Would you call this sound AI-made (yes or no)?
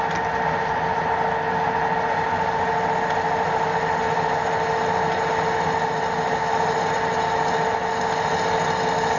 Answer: no